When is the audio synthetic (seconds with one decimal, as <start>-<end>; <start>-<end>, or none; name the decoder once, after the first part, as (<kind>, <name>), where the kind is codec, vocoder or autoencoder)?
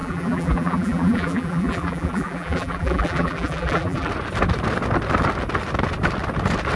0.0-4.1 (vocoder, BigVGAN v2)